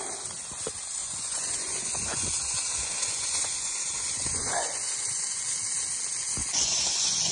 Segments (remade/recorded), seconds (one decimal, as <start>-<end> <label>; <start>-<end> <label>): 0.0-1.0 recorded; 1.0-5.4 remade; 5.4-6.4 recorded; 6.4-7.3 remade

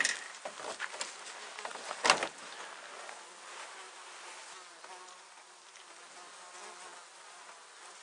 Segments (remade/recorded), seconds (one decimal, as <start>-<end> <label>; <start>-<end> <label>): 0.0-8.0 recorded

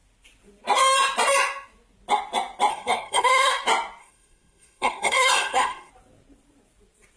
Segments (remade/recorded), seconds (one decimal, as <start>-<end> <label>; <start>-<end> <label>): 0.0-2.7 recorded; 2.7-3.5 remade; 3.5-4.0 recorded; 4.0-5.9 remade; 5.9-7.2 recorded

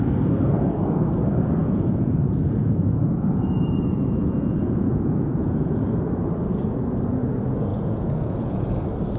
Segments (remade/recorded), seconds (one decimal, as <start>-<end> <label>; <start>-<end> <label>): 0.0-1.6 recorded; 1.6-5.8 remade; 5.8-7.7 recorded; 7.7-8.7 remade; 8.7-9.2 recorded

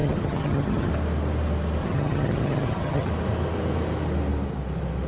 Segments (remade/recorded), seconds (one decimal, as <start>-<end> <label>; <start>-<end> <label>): 0.0-0.9 remade; 0.9-1.8 recorded; 1.8-3.1 remade; 3.1-5.1 recorded

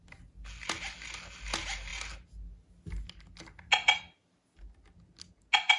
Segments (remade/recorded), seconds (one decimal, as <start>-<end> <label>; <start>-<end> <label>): 0.0-5.8 recorded